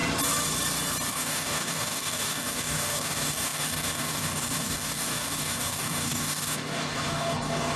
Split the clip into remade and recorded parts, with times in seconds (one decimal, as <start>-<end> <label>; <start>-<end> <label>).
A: 0.0-1.1 recorded; 1.1-7.8 remade